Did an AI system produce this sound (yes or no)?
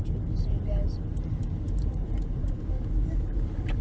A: yes